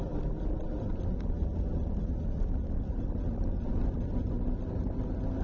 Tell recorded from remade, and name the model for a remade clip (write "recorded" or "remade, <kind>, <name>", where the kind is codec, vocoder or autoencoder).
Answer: recorded